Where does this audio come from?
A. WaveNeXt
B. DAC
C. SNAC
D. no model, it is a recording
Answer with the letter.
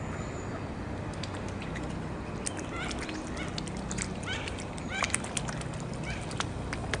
D